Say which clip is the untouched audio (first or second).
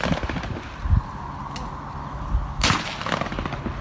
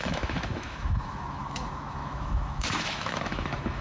first